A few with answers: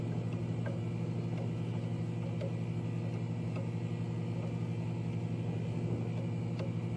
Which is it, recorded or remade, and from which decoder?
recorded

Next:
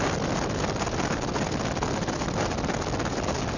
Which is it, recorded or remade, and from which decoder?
recorded